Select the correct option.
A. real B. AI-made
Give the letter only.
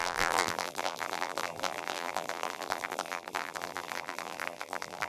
B